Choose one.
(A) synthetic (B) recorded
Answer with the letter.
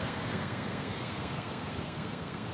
A